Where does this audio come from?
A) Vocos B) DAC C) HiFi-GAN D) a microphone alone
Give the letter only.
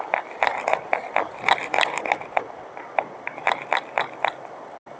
D